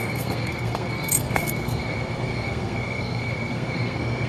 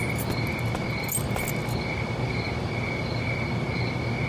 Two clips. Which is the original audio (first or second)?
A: second